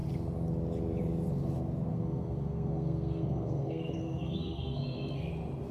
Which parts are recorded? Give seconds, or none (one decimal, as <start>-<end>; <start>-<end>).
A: 0.0-1.9; 5.3-5.7